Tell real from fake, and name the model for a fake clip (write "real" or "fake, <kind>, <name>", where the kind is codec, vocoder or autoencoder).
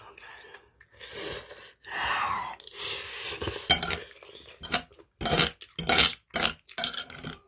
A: real